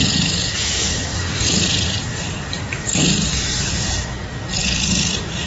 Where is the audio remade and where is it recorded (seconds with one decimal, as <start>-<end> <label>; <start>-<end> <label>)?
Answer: 0.0-1.1 recorded; 1.1-3.0 remade; 3.0-4.6 recorded; 4.6-5.5 remade